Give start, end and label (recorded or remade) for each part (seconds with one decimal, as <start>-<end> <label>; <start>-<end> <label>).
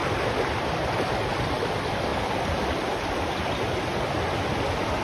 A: 0.0-0.9 remade; 0.9-2.1 recorded; 2.1-4.0 remade; 4.0-5.0 recorded